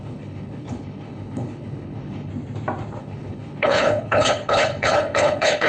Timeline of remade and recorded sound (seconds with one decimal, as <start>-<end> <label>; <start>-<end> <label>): 0.0-2.3 remade; 2.3-3.0 recorded; 3.0-5.7 remade